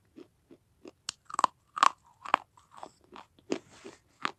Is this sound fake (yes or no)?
no